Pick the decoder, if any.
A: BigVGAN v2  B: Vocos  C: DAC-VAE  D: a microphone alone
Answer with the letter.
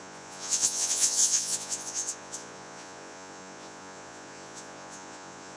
B